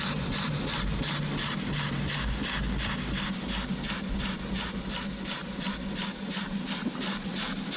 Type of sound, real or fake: real